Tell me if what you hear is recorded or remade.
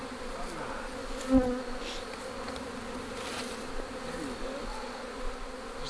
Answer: recorded